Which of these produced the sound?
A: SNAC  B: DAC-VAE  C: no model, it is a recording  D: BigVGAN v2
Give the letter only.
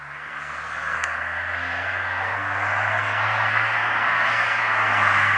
A